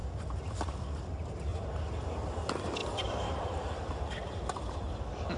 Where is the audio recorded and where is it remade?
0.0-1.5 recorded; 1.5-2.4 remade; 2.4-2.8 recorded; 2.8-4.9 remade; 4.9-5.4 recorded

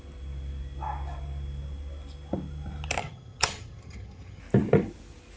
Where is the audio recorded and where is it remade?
0.0-3.0 recorded; 3.0-4.4 remade; 4.4-5.4 recorded

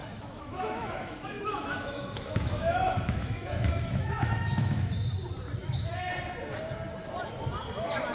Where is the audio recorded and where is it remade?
0.0-4.9 remade; 4.9-5.6 recorded; 5.6-6.1 remade; 6.1-8.1 recorded

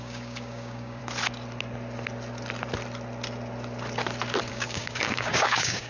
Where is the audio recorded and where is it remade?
0.0-1.0 remade; 1.0-4.5 recorded; 4.5-5.9 remade